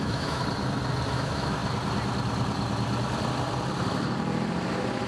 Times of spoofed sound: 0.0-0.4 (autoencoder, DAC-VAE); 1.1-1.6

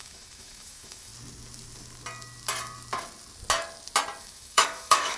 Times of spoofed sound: 0.0-1.1 (autoencoder, DAC-VAE); 4.2-5.2

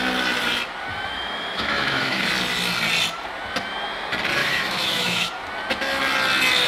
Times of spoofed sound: 0.9-2.3 (autoencoder, DAC-VAE); 4.4-5.3

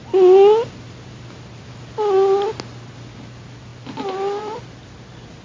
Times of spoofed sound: none

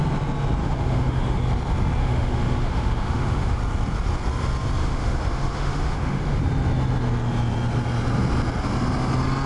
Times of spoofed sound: 0.6-1.4 (autoencoder, DAC-VAE); 2.0-3.6; 4.8-6.4

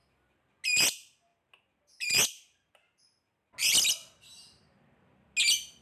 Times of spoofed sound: none

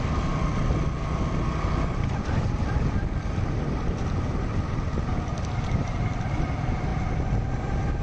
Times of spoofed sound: none